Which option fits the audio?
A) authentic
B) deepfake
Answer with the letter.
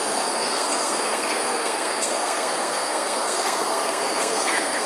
B